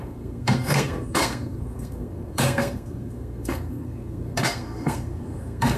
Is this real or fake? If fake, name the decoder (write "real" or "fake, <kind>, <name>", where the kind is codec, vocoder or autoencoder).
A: fake, codec, SNAC